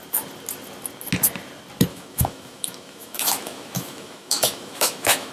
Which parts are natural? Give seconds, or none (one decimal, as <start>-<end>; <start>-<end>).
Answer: 0.0-1.9